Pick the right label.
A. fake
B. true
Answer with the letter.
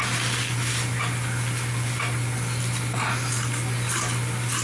B